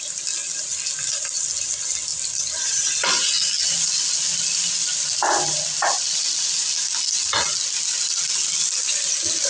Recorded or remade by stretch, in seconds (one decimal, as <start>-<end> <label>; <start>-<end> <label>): 0.0-9.5 recorded

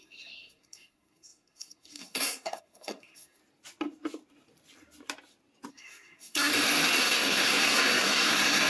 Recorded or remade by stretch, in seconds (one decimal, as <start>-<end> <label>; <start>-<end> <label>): 0.0-3.4 remade; 3.4-5.7 recorded; 5.7-6.5 remade; 6.5-7.0 recorded; 7.0-8.7 remade

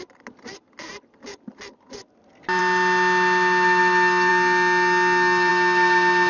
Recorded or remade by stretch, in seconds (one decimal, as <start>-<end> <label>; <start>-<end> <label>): 0.0-6.3 recorded

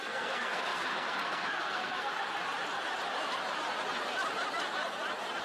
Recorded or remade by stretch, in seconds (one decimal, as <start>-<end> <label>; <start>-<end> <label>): 0.0-2.1 remade; 2.1-5.4 recorded

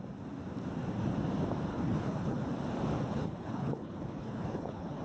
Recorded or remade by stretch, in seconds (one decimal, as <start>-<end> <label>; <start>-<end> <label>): 0.0-1.7 recorded; 1.7-2.4 remade; 2.4-3.1 recorded; 3.1-5.0 remade

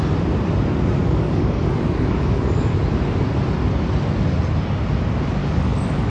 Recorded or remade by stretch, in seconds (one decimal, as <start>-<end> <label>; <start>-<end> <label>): 0.0-1.0 recorded; 1.0-2.7 remade; 2.7-5.4 recorded; 5.4-6.1 remade